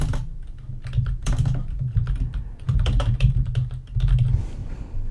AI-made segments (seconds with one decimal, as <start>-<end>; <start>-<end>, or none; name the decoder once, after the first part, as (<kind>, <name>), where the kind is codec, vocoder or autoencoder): 1.2-3.3 (vocoder, BigVGAN v2); 4.6-5.1